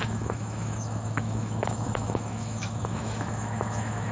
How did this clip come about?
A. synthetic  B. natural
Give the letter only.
A